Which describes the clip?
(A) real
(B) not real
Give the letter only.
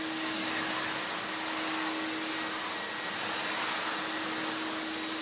A